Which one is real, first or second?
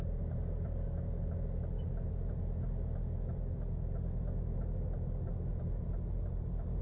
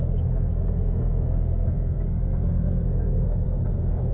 first